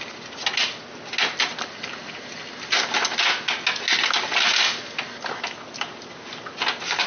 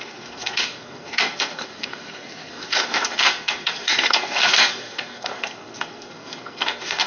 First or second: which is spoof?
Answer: second